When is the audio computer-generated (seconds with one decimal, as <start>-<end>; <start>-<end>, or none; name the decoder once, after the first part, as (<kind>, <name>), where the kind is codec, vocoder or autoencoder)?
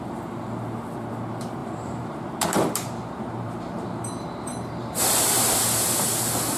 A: 1.6-5.6 (vocoder, BigVGAN v2)